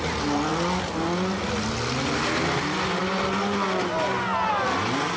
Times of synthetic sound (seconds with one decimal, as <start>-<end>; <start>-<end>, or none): none

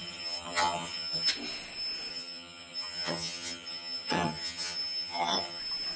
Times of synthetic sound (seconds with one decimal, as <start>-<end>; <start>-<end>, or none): 0.0-1.3; 2.1-5.6

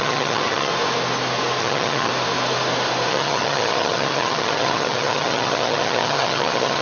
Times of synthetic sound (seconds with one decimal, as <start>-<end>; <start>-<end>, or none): 0.0-0.7; 1.6-2.1; 3.1-6.8